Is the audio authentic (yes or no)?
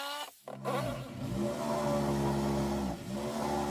yes